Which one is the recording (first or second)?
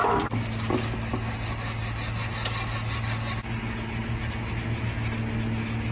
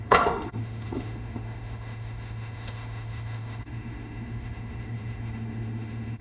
first